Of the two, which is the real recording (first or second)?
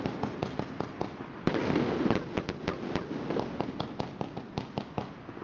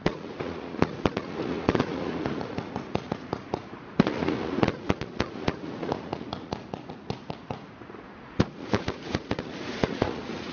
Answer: first